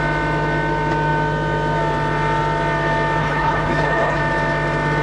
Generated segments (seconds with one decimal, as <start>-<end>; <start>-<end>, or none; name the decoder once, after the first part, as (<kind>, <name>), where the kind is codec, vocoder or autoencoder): 3.2-4.2 (codec, HILCodec)